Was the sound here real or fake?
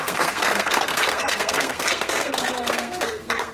fake